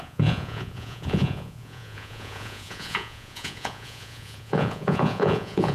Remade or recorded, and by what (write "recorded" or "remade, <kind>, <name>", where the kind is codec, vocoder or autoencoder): remade, vocoder, Vocos